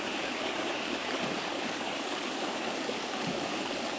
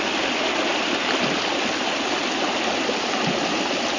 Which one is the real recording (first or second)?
second